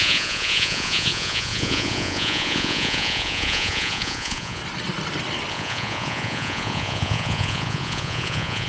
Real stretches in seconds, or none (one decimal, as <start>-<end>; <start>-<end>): 4.6-5.5